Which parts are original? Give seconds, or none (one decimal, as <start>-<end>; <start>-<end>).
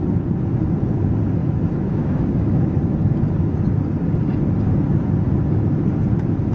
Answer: 0.0-1.4; 2.7-6.5